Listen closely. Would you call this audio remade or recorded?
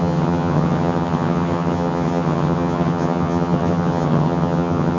remade